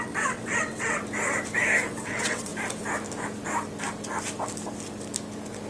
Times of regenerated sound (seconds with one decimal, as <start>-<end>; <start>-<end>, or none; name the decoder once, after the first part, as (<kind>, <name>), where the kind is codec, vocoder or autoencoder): 0.0-1.0 (vocoder, WaveNeXt); 1.9-2.5